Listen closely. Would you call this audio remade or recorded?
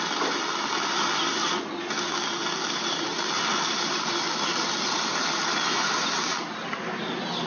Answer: recorded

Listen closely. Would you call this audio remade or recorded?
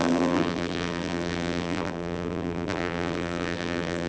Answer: remade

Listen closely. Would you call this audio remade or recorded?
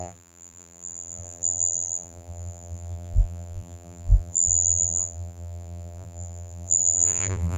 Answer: remade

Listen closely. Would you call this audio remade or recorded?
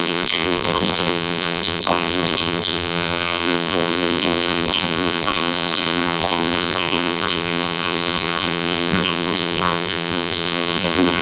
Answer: remade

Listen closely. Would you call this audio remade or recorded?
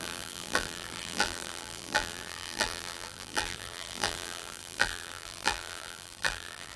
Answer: remade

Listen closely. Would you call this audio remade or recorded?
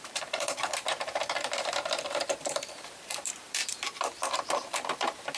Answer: remade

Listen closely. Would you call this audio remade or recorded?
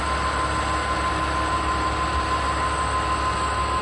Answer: recorded